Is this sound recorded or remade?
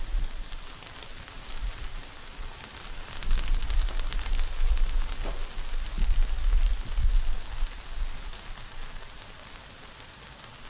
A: recorded